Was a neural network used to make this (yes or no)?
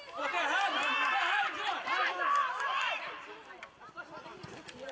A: yes